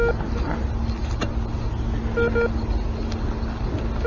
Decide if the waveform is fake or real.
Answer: real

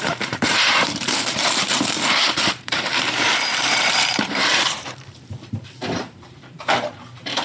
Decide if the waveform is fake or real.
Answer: fake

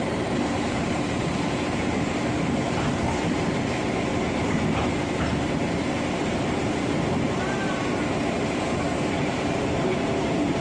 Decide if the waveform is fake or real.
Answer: fake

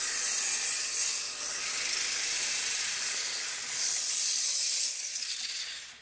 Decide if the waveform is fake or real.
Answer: real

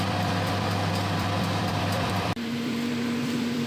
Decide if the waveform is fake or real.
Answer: fake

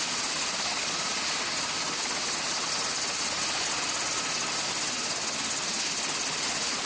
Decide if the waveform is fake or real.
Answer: real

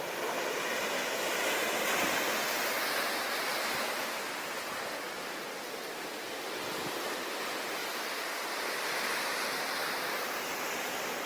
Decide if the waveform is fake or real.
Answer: fake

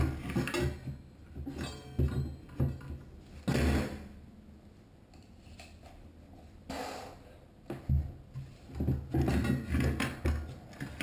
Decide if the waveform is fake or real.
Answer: real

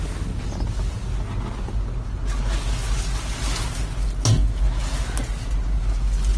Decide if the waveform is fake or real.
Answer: real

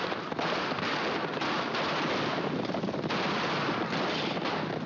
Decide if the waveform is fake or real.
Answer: real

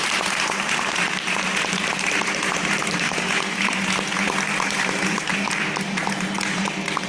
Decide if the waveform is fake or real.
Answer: fake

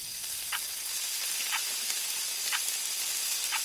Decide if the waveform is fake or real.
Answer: fake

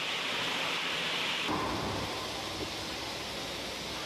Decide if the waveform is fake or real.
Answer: real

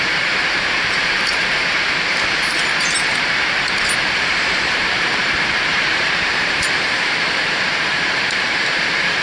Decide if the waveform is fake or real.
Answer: fake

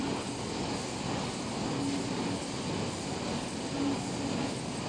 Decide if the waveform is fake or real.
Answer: real